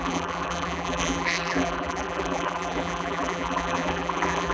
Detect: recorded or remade remade